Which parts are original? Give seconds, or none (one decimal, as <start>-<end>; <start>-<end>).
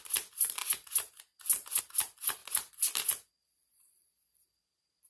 0.0-5.1